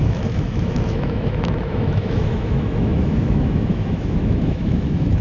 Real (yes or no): no